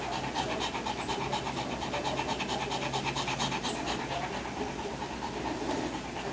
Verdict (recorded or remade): remade